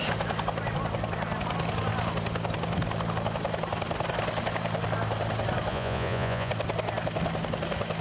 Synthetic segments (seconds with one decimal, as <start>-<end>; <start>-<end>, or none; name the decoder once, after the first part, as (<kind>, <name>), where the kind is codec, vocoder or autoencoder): 5.7-6.5 (vocoder, Vocos)